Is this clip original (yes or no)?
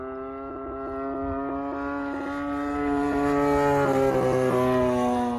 yes